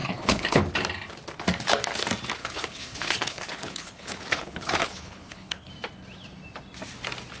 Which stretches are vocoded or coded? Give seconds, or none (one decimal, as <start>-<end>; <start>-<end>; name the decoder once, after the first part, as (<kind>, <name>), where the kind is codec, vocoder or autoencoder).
0.0-0.6 (codec, HILCodec); 2.4-5.7